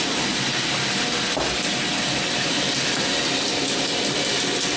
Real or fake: real